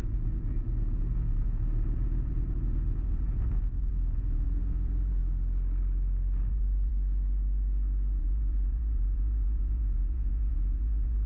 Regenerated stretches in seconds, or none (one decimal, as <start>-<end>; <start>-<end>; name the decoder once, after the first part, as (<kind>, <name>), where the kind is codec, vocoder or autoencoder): 0.0-5.2 (vocoder, Vocos); 6.5-6.9; 8.2-11.3